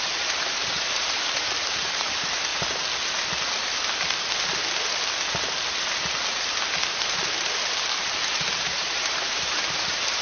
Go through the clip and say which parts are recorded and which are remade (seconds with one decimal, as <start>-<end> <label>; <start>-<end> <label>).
0.0-2.5 remade; 2.5-6.9 recorded; 6.9-10.2 remade